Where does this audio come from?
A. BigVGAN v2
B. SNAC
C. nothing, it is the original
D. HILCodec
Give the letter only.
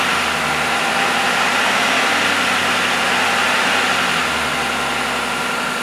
C